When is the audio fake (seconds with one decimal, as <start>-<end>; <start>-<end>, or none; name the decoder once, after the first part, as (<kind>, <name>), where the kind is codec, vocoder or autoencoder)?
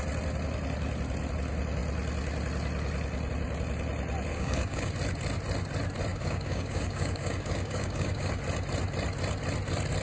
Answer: 4.3-4.9 (codec, DAC); 6.1-8.3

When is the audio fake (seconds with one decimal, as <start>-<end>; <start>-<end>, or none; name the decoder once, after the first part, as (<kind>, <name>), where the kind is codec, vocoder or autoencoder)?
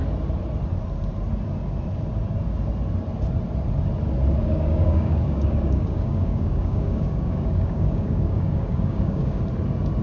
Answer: 4.4-9.4 (codec, DAC)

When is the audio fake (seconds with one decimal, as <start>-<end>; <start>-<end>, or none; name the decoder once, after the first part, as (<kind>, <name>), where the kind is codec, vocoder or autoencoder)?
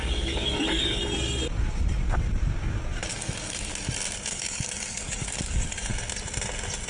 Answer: 0.0-1.0 (codec, DAC); 3.1-3.7; 4.3-5.9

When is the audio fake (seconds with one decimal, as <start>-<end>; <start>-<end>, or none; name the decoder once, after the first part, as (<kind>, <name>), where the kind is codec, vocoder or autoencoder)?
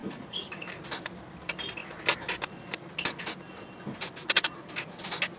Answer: 0.0-0.8 (codec, DAC)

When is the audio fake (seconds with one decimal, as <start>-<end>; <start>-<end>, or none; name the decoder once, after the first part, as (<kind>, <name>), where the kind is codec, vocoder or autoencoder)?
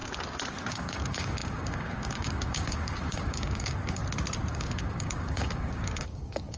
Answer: 0.7-4.0 (codec, DAC); 4.5-6.6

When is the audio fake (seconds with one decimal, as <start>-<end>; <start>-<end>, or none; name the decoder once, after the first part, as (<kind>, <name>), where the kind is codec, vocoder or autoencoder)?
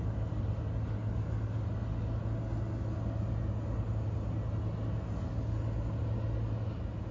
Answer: none